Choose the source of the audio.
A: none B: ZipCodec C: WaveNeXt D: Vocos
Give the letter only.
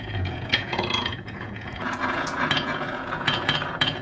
D